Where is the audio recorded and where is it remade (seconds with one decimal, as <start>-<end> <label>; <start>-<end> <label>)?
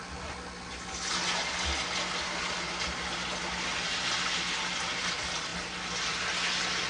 0.0-6.9 recorded